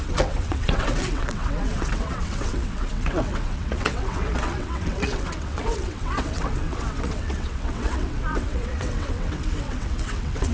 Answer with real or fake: fake